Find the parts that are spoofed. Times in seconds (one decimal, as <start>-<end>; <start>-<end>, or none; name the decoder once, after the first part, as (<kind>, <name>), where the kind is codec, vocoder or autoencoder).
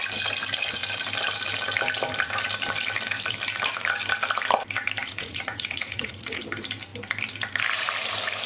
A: 5.0-6.4 (vocoder, Vocos)